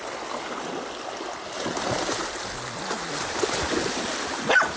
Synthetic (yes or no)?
no